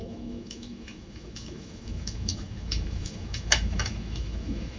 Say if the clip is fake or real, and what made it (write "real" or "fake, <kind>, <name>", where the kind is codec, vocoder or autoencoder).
fake, autoencoder, DAC-VAE